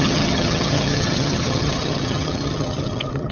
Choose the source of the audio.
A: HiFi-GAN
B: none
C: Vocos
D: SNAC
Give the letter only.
A